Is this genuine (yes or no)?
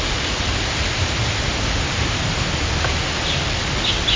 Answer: yes